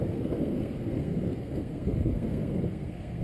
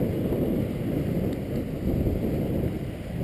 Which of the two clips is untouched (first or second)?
second